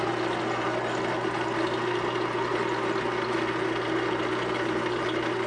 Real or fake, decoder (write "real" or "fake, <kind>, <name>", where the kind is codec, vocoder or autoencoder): real